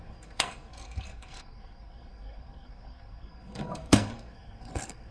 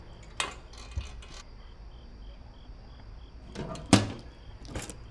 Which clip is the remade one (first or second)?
first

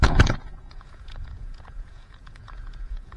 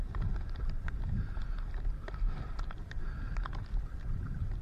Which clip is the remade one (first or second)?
first